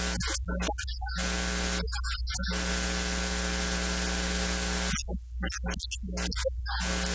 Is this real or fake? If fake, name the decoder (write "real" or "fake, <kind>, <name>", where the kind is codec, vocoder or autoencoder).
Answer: real